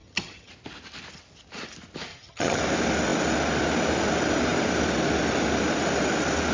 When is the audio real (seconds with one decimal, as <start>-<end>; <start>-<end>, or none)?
0.5-2.1; 2.6-6.5